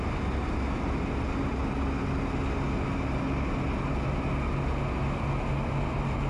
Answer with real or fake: real